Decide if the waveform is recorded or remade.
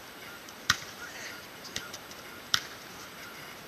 remade